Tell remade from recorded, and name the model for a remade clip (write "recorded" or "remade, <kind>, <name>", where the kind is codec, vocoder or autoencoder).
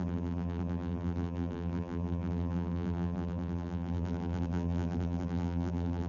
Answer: remade, vocoder, BigVGAN v2